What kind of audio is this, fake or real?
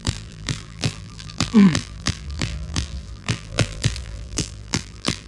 fake